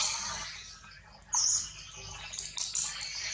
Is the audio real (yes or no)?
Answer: yes